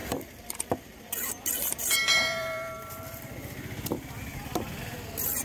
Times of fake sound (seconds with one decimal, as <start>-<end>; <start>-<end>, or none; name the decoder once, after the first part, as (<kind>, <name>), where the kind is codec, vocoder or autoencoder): 0.0-3.2 (vocoder, BigVGAN v2)